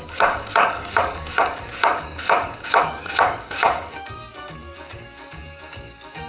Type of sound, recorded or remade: remade